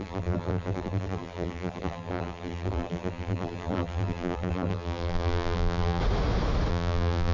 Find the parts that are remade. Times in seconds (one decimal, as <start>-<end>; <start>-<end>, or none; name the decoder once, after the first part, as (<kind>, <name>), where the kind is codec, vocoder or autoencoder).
0.0-6.0 (vocoder, BigVGAN v2); 6.7-7.3